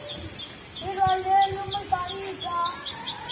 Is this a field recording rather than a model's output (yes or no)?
yes